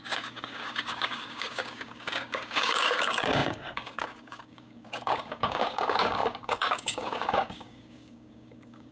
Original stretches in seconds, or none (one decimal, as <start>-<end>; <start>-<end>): none